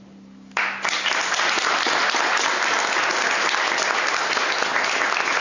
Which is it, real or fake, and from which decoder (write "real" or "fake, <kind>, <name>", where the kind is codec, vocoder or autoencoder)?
real